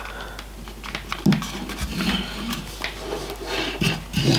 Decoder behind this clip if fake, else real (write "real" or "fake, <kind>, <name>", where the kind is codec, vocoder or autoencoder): real